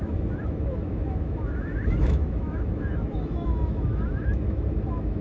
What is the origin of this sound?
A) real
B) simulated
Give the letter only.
B